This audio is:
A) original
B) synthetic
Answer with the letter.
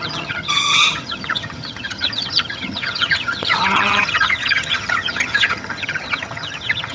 B